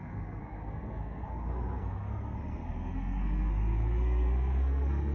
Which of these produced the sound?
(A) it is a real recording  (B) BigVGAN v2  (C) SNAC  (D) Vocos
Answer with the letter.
C